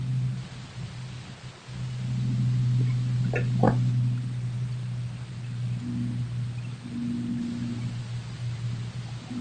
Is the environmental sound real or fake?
real